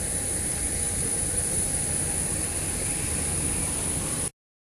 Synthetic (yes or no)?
no